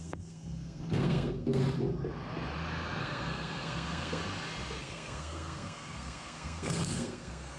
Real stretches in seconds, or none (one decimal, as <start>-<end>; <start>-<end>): 1.6-3.0; 4.2-4.8